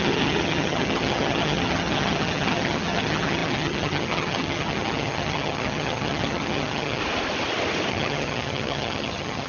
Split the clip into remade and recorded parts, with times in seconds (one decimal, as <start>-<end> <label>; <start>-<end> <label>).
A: 0.0-7.0 remade; 7.0-7.9 recorded; 7.9-9.5 remade